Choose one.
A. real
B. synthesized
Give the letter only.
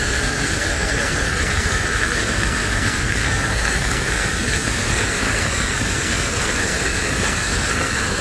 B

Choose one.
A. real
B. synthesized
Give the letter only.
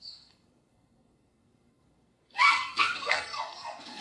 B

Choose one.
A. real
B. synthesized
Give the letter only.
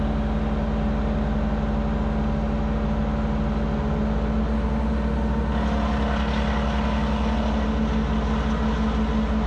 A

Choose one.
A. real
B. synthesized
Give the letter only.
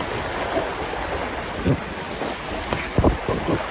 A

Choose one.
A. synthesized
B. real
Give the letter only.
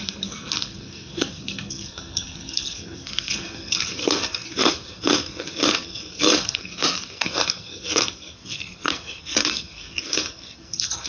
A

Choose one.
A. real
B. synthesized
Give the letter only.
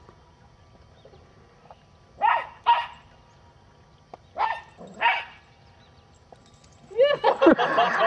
A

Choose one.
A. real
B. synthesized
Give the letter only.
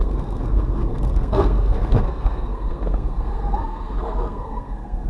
B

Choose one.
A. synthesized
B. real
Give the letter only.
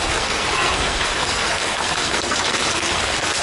A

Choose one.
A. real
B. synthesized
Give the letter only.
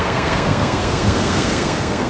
B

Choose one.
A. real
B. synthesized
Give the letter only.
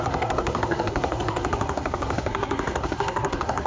B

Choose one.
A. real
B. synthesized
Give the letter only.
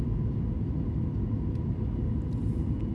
A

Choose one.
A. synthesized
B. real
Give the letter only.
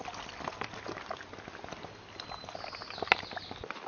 B